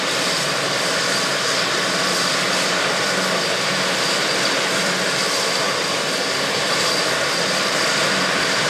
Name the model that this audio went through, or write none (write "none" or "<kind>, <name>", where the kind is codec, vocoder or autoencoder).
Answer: vocoder, BigVGAN v2